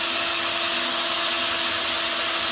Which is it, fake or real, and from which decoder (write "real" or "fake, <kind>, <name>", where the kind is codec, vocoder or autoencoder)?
real